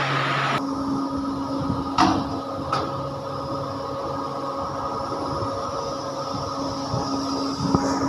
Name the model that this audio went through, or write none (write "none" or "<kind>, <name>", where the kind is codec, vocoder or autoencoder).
none